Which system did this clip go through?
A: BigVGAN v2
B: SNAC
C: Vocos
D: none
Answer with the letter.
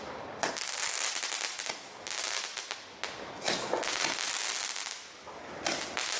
D